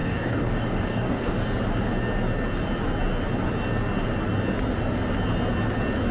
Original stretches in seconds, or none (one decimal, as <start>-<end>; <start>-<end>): 1.3-6.1